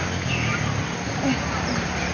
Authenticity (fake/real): real